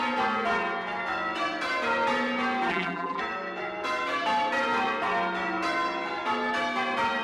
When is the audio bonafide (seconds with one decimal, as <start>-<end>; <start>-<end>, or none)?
0.0-2.7; 3.2-7.2